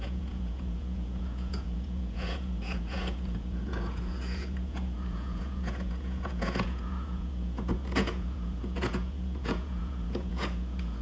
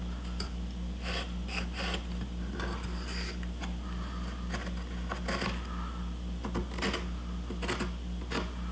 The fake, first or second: first